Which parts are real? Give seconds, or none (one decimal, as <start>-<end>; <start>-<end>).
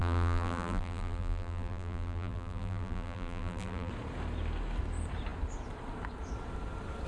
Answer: 3.9-7.1